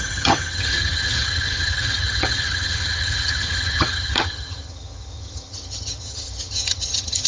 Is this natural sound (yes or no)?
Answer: no